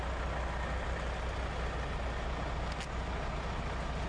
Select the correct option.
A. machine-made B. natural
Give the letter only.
B